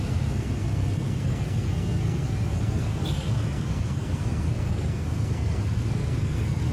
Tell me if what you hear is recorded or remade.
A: remade